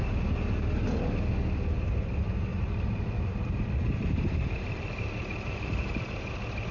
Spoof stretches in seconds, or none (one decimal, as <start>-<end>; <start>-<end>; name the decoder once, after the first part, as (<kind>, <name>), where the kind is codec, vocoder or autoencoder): 2.5-6.3 (vocoder, BigVGAN v2)